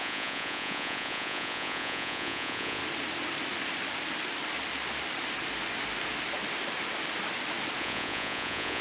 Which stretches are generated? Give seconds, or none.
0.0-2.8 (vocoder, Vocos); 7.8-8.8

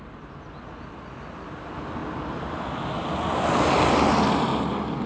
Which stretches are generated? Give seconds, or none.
none